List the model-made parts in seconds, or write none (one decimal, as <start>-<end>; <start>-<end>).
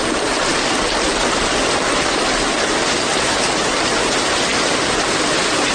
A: none